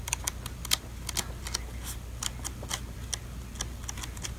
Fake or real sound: real